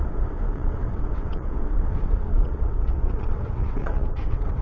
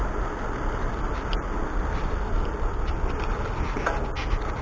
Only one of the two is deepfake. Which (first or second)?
first